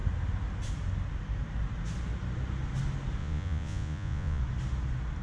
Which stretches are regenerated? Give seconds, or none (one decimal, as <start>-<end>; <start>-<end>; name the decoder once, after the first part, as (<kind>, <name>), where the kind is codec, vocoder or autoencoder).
3.2-4.4 (vocoder, Vocos)

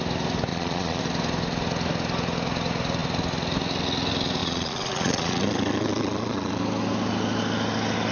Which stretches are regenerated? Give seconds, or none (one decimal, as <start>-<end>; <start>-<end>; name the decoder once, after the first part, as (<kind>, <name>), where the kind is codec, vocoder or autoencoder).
0.5-1.0 (vocoder, Vocos); 4.4-6.6

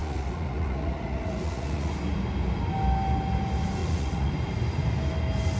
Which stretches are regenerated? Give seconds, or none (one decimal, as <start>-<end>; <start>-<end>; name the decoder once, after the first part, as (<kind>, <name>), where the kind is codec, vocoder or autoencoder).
0.0-1.9 (vocoder, Vocos); 3.8-4.3

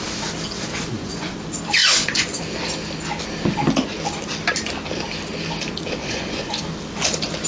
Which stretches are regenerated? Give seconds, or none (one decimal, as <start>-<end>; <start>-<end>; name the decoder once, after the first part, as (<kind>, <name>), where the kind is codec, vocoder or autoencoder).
0.7-1.4 (vocoder, Vocos); 1.8-2.4; 6.0-6.6